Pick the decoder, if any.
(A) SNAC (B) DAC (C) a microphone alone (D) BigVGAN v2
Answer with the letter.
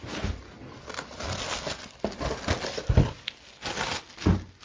C